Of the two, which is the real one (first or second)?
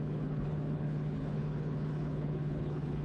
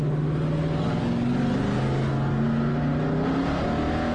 second